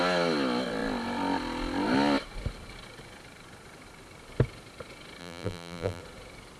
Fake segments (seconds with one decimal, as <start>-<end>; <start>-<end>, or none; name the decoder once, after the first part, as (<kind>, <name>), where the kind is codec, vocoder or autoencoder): 5.2-6.0 (vocoder, BigVGAN v2)